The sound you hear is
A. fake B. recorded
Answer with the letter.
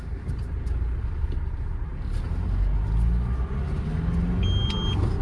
B